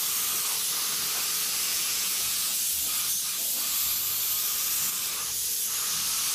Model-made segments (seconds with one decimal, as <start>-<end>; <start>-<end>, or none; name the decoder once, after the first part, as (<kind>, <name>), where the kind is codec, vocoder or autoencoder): 1.7-2.6 (vocoder, Vocos)

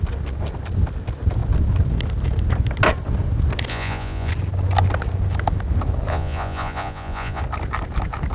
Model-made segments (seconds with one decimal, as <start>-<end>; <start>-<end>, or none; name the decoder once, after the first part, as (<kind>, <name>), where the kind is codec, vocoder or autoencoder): 3.7-4.3 (vocoder, Vocos); 6.1-7.4

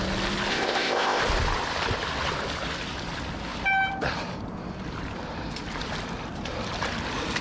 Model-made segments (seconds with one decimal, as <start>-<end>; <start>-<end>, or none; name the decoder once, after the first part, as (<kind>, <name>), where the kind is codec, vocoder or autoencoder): 0.5-1.2 (codec, ZipCodec)

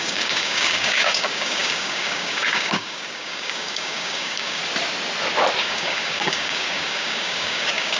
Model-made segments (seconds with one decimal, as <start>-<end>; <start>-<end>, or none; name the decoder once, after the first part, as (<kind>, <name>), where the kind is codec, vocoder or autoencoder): 0.0-4.6 (codec, DAC); 5.6-8.0